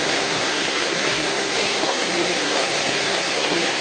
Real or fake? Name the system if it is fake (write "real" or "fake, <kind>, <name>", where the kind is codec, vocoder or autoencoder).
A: fake, codec, SNAC